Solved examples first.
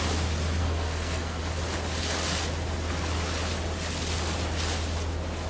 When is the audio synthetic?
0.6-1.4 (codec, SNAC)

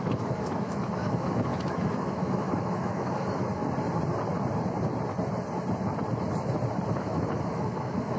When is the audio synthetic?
0.0-3.6 (autoencoder, DAC-VAE); 7.0-8.2

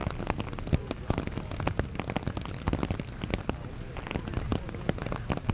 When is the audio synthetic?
none

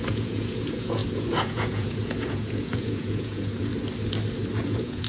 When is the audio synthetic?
0.0-3.7 (vocoder, Vocos); 4.6-5.1

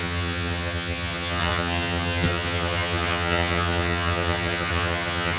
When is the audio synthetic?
0.0-5.4 (vocoder, HiFi-GAN)